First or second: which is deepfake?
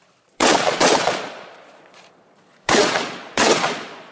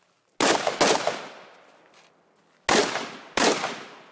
first